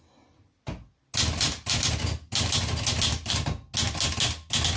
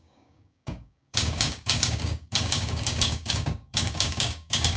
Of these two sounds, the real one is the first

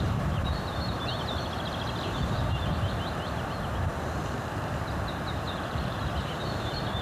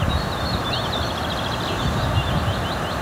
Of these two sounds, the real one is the second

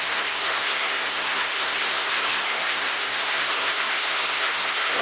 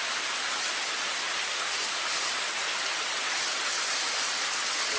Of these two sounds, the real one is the second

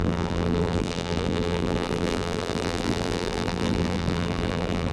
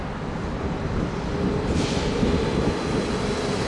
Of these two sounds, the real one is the second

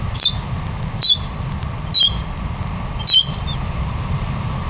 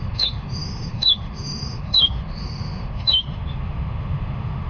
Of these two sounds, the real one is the first